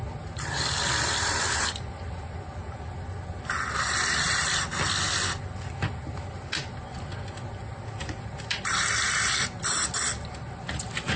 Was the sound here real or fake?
real